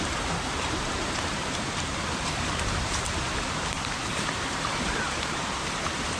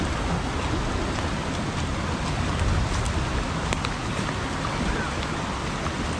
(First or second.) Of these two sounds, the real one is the second